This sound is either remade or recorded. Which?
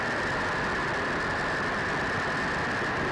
recorded